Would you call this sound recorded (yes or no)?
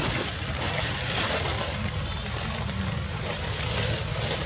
yes